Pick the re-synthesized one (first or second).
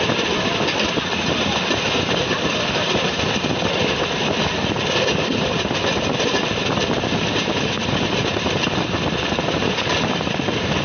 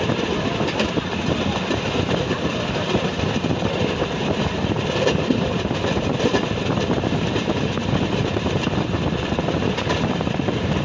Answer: second